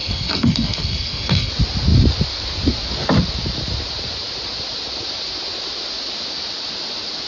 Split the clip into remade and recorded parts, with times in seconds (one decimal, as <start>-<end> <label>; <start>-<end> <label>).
0.0-1.5 remade; 1.5-7.3 recorded